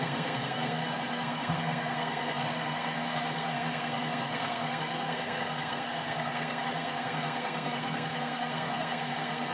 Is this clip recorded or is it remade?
remade